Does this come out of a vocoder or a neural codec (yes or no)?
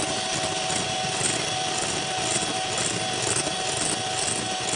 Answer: no